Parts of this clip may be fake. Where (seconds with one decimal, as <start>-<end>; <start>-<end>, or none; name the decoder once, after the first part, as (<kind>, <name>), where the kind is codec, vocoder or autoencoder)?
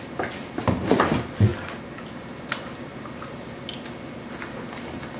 none